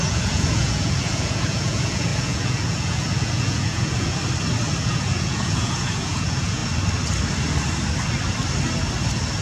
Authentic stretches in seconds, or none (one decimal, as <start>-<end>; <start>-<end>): 4.2-4.8; 6.6-9.4